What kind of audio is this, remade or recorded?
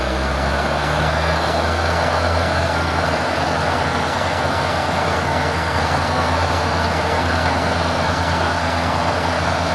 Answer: remade